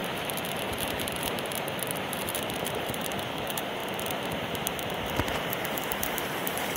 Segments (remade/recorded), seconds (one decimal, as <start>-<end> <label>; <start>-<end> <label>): 0.0-3.8 remade; 3.8-4.3 recorded; 4.3-6.8 remade